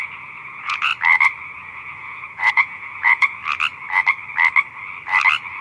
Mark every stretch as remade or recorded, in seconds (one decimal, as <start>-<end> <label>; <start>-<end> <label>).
0.0-0.9 remade; 0.9-1.4 recorded; 1.4-3.4 remade; 3.4-5.6 recorded